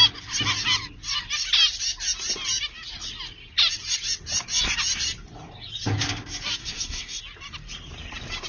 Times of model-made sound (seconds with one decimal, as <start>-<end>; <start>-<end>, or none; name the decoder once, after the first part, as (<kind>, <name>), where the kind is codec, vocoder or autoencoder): 6.6-7.2 (codec, SNAC)